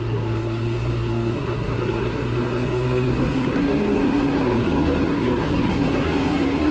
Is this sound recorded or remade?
remade